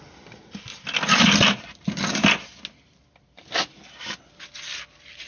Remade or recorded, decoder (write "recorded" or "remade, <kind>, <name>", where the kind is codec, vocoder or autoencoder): recorded